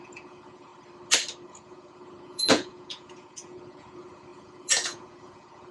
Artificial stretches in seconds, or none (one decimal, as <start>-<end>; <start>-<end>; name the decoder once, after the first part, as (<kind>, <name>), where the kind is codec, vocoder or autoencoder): 0.0-0.7 (vocoder, Vocos); 1.5-5.7